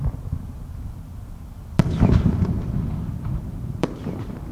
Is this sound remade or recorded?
remade